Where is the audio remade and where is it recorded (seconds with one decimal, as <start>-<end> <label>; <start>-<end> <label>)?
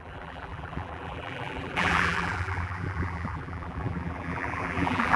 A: 0.0-5.2 remade